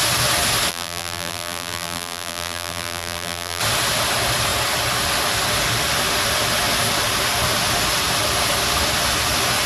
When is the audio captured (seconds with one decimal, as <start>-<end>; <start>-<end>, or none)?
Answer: 0.0-0.7; 3.6-9.7